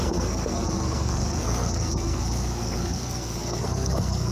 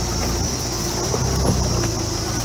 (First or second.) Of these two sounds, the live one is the second